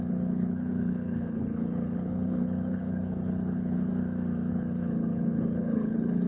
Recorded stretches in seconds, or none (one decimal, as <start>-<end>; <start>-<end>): 3.9-4.5